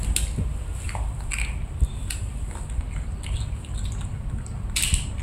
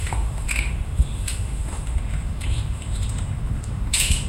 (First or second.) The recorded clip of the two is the first